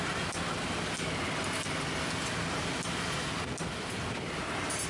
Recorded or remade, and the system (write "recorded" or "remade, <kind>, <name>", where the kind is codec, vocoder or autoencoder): recorded